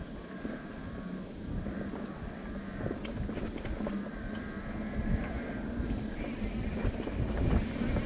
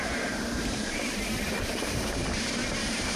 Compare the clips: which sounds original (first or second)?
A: first